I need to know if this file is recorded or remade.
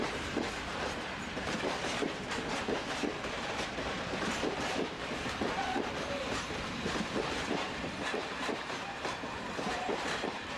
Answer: remade